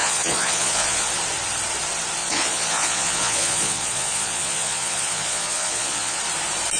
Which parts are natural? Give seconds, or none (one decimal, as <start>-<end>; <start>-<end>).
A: 1.1-2.2; 6.2-6.8